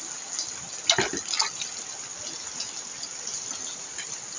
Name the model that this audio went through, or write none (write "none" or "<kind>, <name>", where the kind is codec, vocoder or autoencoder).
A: none